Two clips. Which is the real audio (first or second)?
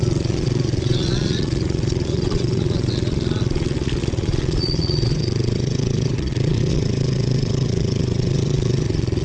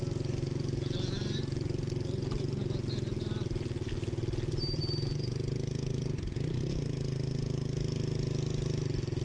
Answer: second